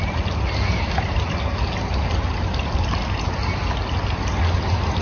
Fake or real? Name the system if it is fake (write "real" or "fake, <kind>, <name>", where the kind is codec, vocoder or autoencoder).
real